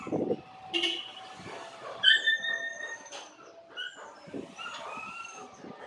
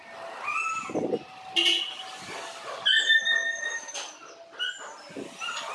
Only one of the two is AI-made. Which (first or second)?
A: first